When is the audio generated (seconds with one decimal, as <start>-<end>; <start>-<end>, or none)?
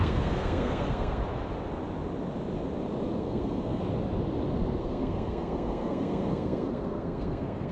0.0-1.2; 3.2-3.8; 4.8-7.7